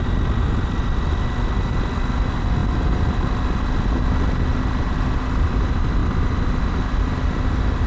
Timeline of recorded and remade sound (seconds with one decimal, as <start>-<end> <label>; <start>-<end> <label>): 0.0-7.9 recorded